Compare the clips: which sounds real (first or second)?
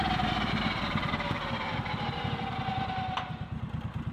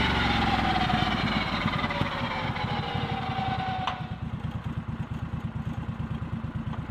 second